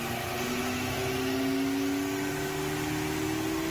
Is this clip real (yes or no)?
yes